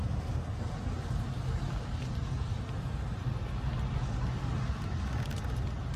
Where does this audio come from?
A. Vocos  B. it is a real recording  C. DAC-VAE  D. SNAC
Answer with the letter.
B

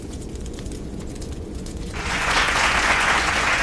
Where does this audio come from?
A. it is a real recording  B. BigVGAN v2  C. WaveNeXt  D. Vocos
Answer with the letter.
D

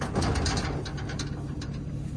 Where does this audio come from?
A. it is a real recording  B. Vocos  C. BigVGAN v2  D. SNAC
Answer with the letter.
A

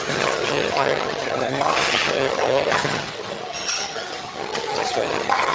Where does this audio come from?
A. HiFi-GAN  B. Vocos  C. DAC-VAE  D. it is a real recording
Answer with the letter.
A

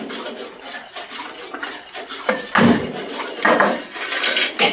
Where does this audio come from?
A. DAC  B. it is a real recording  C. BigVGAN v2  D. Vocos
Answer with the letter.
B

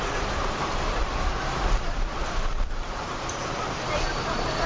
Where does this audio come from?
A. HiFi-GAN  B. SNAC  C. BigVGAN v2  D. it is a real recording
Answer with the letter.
C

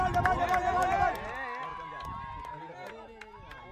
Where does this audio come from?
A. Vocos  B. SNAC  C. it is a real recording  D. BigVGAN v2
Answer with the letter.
C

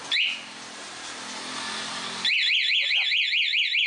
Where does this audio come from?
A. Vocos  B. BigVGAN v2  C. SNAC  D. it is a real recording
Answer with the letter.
D